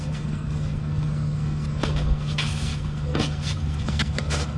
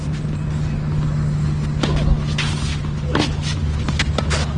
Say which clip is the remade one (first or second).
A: first